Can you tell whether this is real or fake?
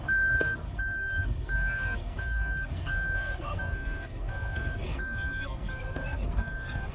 fake